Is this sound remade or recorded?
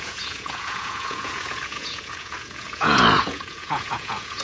remade